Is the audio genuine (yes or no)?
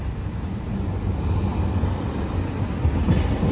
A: yes